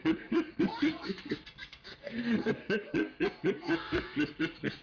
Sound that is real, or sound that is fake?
fake